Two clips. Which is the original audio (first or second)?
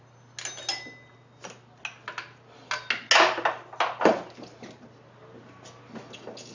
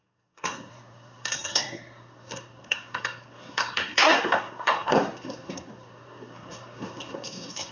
first